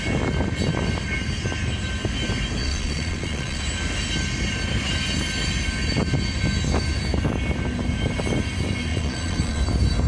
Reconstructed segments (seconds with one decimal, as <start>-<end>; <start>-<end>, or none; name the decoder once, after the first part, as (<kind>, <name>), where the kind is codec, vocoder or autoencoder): 2.6-3.6 (vocoder, Vocos); 8.9-9.6